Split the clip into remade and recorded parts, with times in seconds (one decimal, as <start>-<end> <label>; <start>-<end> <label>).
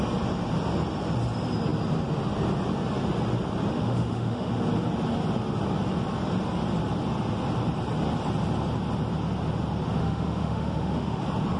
0.0-3.7 recorded; 3.7-4.5 remade; 4.5-10.0 recorded; 10.0-11.2 remade; 11.2-11.6 recorded